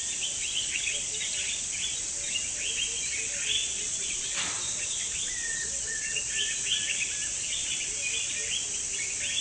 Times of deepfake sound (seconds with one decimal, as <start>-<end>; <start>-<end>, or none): 0.4-1.2; 3.6-6.2